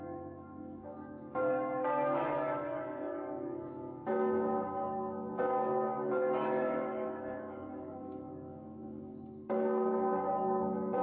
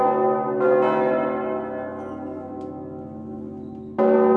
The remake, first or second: first